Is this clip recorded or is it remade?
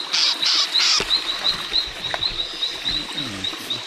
recorded